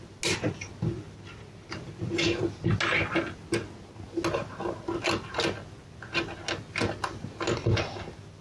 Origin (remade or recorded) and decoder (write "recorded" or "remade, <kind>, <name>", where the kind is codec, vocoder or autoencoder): recorded